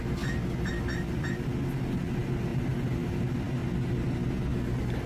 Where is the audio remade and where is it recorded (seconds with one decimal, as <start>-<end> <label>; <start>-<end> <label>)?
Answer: 0.0-5.1 recorded